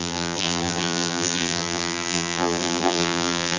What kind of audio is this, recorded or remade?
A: remade